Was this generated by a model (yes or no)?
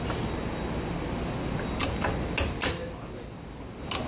no